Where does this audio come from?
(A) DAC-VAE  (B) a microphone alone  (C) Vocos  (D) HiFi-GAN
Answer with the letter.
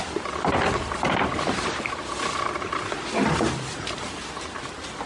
B